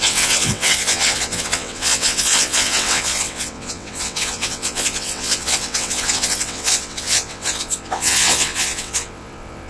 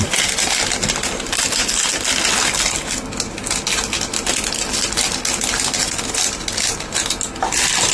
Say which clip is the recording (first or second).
second